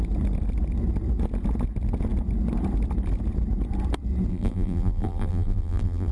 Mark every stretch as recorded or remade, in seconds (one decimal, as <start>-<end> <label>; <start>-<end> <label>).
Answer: 0.0-4.3 recorded; 4.3-6.1 remade